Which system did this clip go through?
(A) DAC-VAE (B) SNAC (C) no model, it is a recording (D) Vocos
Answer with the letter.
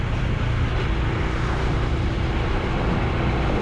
C